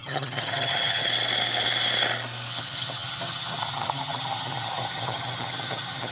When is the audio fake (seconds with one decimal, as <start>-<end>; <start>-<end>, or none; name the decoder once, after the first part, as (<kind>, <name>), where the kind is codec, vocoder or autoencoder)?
0.0-1.1 (vocoder, HiFi-GAN); 2.5-6.1